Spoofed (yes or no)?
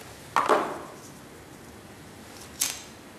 no